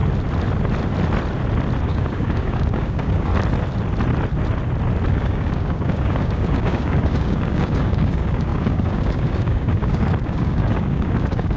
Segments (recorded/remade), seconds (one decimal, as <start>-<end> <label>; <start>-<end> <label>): 0.0-1.8 recorded; 1.8-3.3 remade; 3.3-5.1 recorded; 5.1-11.6 remade